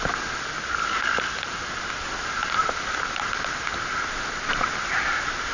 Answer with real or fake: real